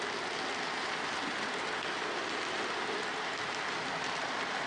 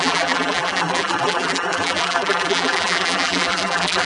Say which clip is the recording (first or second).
first